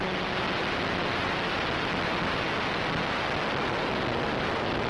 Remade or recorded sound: recorded